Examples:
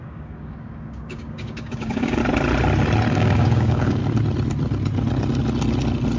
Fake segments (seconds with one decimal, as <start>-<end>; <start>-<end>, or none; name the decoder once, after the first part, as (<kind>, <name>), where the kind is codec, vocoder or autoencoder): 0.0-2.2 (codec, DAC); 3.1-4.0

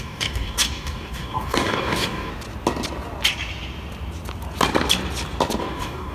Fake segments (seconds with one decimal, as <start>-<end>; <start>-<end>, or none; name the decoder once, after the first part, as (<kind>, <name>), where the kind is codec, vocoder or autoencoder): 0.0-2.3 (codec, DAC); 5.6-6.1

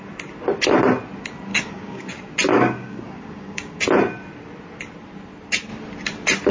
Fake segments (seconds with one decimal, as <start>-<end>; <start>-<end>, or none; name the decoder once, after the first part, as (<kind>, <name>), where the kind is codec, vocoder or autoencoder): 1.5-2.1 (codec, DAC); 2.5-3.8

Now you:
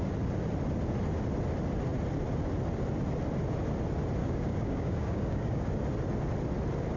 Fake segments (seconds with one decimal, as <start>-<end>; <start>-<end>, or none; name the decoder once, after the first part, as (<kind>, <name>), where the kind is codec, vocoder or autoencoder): 4.2-5.7 (codec, DAC)